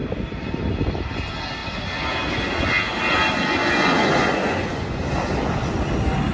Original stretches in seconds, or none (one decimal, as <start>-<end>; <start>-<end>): 0.0-3.6; 5.0-6.3